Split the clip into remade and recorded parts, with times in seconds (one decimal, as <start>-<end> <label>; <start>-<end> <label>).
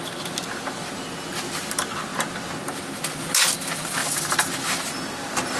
0.0-4.0 recorded; 4.0-5.6 remade